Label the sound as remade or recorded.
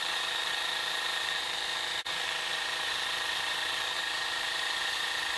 remade